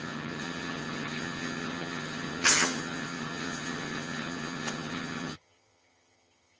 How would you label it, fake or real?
fake